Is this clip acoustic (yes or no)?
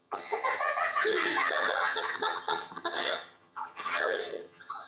no